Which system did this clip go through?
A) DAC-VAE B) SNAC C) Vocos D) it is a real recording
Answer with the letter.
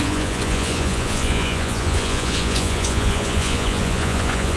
C